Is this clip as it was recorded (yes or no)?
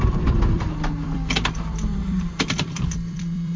no